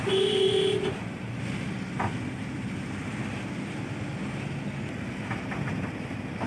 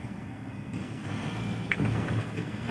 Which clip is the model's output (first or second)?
second